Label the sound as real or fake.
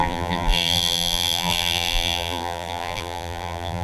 fake